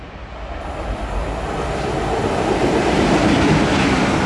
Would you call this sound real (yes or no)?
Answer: yes